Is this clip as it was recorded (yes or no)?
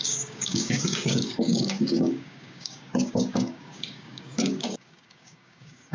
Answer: no